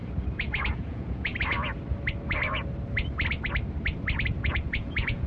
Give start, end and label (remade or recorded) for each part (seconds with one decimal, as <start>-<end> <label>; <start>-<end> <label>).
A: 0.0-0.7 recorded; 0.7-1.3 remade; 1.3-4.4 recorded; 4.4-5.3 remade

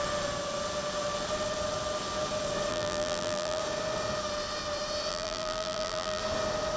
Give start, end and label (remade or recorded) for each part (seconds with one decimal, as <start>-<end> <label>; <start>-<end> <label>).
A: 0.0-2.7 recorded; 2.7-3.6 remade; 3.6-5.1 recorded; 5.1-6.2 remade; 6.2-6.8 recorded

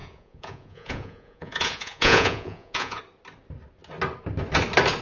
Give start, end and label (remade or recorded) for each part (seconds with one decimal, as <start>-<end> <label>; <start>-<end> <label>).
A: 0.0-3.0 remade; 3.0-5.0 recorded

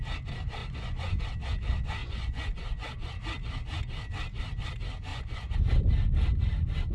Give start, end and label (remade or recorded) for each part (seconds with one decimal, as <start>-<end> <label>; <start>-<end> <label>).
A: 0.0-0.6 recorded; 0.6-1.2 remade; 1.2-2.0 recorded; 2.0-3.1 remade; 3.1-5.1 recorded; 5.1-5.7 remade; 5.7-6.9 recorded

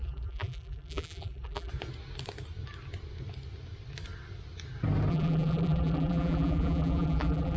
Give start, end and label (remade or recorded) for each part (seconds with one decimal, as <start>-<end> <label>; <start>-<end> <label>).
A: 0.0-1.7 remade; 1.7-5.1 recorded; 5.1-7.6 remade